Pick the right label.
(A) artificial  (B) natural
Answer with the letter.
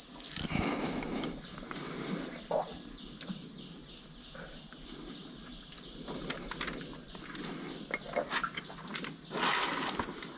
B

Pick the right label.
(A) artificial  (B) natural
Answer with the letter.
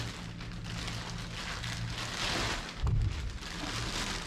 B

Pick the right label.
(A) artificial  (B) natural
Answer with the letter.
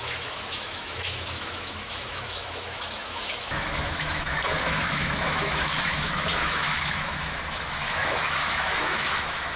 A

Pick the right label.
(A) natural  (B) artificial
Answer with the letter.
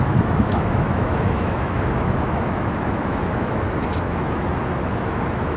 B